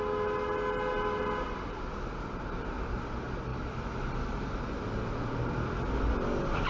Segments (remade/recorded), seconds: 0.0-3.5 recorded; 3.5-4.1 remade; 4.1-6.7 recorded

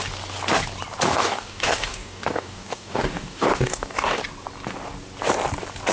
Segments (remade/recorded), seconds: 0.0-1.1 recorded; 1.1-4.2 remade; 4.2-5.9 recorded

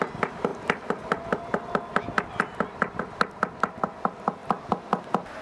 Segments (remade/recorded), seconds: 0.0-5.4 recorded

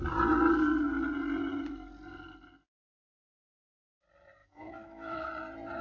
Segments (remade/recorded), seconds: 0.0-4.4 recorded; 4.4-5.3 remade; 5.3-5.8 recorded

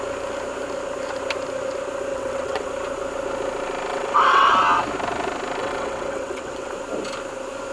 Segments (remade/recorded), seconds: 0.0-2.1 recorded; 2.1-2.7 remade; 2.7-3.9 recorded; 3.9-4.5 remade; 4.5-5.6 recorded; 5.6-6.7 remade; 6.7-7.7 recorded

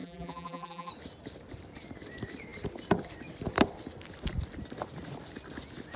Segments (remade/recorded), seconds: 0.0-0.9 remade; 0.9-6.0 recorded

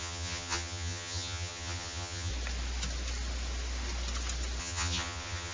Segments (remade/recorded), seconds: 0.0-2.3 remade; 2.3-4.6 recorded; 4.6-5.5 remade

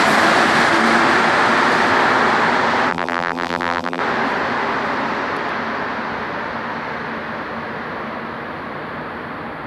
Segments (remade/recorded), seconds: 0.0-2.9 recorded; 2.9-4.0 remade; 4.0-9.7 recorded